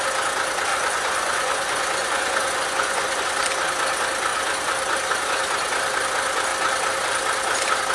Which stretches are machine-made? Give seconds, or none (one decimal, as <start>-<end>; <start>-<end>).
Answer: 0.7-3.2